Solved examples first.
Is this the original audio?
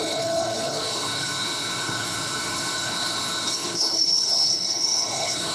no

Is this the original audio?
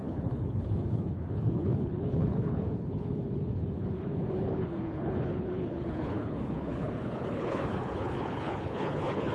no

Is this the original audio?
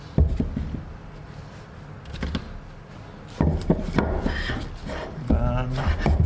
yes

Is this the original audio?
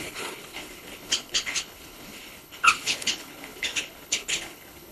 no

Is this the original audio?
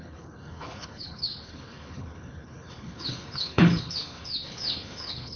no